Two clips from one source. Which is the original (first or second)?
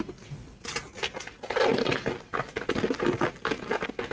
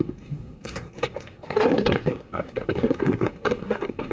first